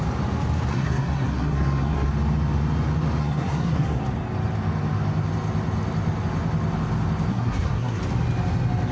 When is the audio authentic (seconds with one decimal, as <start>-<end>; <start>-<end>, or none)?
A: 0.0-0.7; 2.1-3.2; 4.0-7.3; 8.0-8.9